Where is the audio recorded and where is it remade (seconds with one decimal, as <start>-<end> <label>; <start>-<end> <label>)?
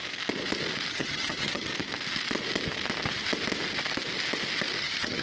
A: 0.0-0.9 recorded; 0.9-1.7 remade; 1.7-4.8 recorded; 4.8-5.2 remade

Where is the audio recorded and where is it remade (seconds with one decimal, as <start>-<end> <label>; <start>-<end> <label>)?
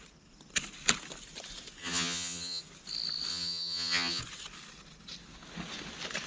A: 0.0-1.8 recorded; 1.8-2.6 remade; 2.6-3.3 recorded; 3.3-4.2 remade; 4.2-6.3 recorded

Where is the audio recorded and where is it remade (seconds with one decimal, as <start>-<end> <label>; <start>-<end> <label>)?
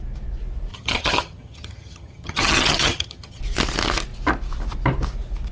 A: 0.0-0.7 recorded; 0.7-3.4 remade; 3.4-5.5 recorded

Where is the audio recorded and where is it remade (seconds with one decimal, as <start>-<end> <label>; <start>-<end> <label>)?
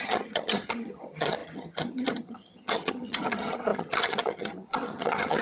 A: 0.0-5.4 remade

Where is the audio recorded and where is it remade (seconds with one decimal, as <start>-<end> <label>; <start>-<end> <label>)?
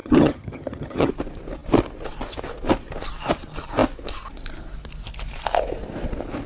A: 0.0-1.1 remade; 1.1-6.5 recorded